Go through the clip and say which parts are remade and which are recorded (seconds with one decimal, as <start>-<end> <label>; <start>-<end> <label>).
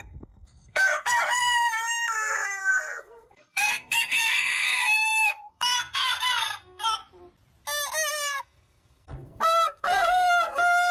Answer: 0.0-7.0 remade; 7.0-8.1 recorded; 8.1-10.9 remade